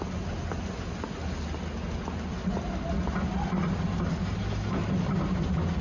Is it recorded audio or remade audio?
recorded